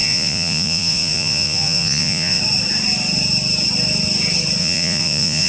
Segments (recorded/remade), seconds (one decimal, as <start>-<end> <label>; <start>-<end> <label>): 0.0-2.4 remade; 2.4-4.6 recorded; 4.6-5.5 remade